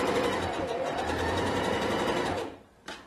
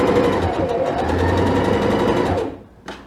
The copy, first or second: first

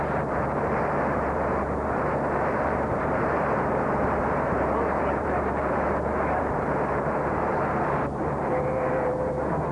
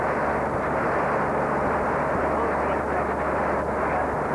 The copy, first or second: first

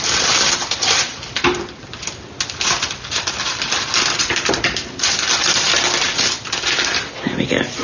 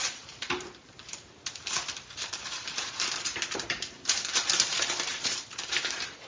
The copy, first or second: second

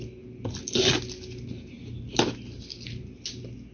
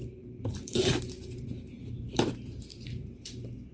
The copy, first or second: second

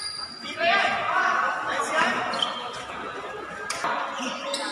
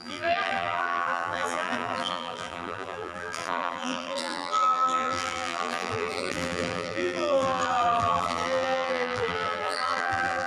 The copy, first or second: second